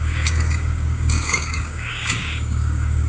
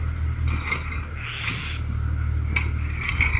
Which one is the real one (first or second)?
second